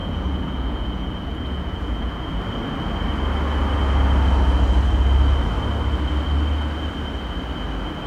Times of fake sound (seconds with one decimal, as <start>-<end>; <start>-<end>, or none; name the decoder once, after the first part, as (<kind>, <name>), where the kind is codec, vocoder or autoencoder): 0.0-2.4 (vocoder, Vocos)